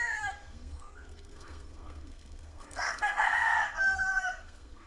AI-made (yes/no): yes